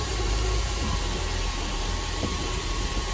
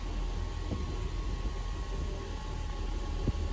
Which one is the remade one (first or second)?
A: first